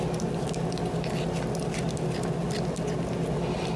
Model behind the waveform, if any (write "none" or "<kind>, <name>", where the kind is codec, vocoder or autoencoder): none